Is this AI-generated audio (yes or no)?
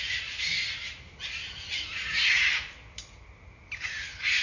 no